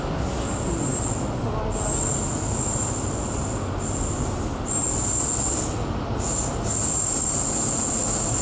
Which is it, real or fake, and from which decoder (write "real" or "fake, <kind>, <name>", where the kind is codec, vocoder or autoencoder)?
real